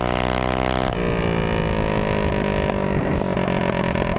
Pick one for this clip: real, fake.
real